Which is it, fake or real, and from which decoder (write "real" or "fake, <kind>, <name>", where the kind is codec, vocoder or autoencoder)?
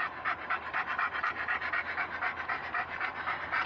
real